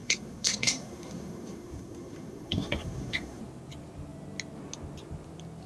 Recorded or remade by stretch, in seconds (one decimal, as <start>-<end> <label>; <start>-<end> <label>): 0.0-3.4 remade; 3.4-5.7 recorded